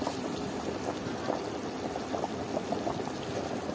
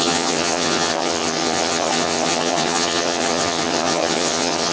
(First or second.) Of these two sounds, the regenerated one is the second